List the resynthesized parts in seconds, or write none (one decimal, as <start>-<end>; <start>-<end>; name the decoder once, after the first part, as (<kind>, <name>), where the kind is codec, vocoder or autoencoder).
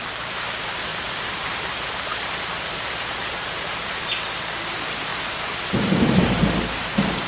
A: 0.9-3.9 (vocoder, BigVGAN v2); 5.1-6.2